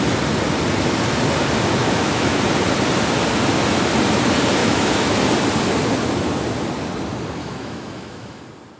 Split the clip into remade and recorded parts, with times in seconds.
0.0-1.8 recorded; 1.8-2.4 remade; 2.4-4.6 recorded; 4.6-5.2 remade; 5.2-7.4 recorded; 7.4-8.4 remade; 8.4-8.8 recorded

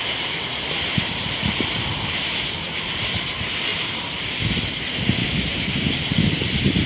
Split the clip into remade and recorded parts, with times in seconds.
0.0-0.9 recorded; 0.9-3.3 remade; 3.3-3.7 recorded; 3.7-4.2 remade; 4.2-5.2 recorded; 5.2-6.9 remade

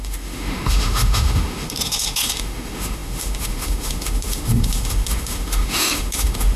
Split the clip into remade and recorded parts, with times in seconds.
0.0-6.6 remade

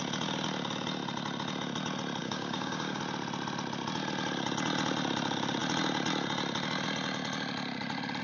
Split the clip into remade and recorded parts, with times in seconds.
0.0-2.2 recorded; 2.2-3.0 remade; 3.0-8.2 recorded

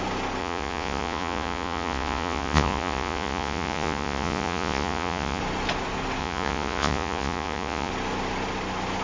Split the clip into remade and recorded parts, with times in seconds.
0.0-0.4 recorded; 0.4-5.4 remade; 5.4-6.2 recorded; 6.2-7.9 remade; 7.9-9.0 recorded

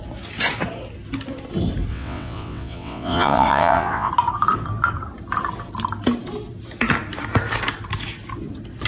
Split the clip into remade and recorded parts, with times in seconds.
0.0-1.9 recorded; 1.9-4.1 remade; 4.1-8.9 recorded

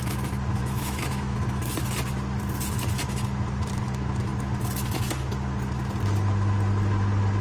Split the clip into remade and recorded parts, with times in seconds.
0.0-0.6 recorded; 0.6-1.7 remade; 1.7-7.4 recorded